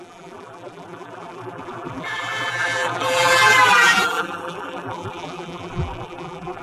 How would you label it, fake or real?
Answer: fake